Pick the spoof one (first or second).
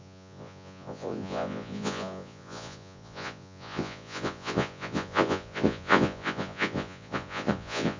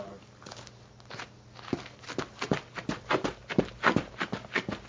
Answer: first